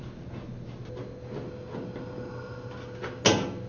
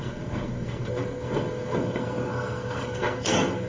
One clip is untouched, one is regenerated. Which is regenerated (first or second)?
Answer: second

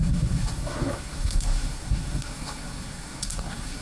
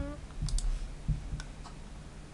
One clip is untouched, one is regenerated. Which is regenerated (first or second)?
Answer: first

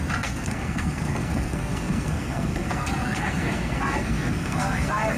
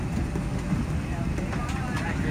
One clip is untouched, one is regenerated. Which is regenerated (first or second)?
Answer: first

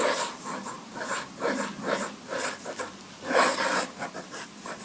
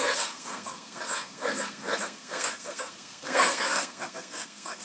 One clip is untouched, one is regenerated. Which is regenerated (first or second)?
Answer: second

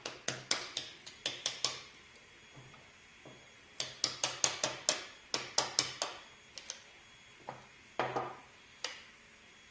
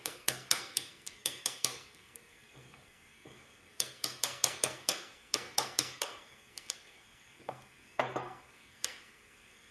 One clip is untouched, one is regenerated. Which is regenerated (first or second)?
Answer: second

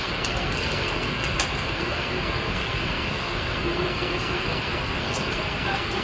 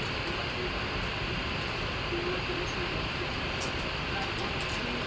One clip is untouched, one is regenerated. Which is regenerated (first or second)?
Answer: first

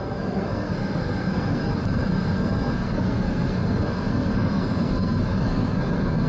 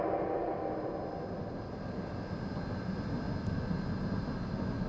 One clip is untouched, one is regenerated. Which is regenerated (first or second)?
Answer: first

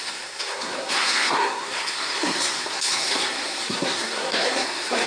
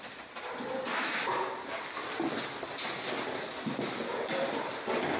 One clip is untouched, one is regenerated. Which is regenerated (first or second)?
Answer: first